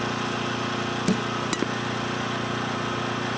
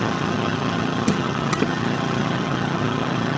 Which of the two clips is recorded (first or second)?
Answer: first